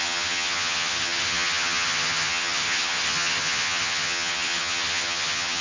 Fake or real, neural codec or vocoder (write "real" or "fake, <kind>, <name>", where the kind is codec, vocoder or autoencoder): fake, vocoder, HiFi-GAN